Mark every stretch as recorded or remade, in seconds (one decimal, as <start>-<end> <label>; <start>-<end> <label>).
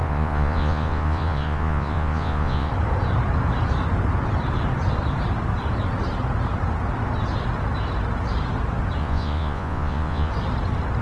0.0-2.7 remade; 2.7-9.0 recorded; 9.0-10.3 remade; 10.3-11.0 recorded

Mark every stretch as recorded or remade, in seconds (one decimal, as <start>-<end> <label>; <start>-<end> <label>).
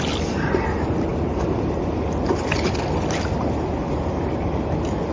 0.0-5.1 recorded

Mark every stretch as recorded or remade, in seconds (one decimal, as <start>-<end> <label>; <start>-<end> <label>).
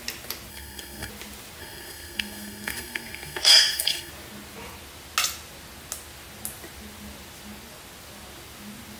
0.0-0.5 recorded; 0.5-1.1 remade; 1.1-1.6 recorded; 1.6-4.1 remade; 4.1-9.0 recorded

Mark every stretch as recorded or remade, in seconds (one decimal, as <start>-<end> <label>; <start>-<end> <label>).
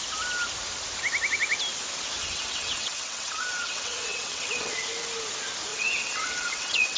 0.0-2.2 recorded; 2.2-4.7 remade; 4.7-5.7 recorded; 5.7-7.0 remade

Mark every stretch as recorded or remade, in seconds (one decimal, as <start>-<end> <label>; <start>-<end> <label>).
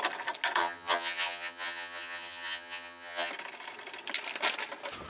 0.0-0.6 recorded; 0.6-3.3 remade; 3.3-5.1 recorded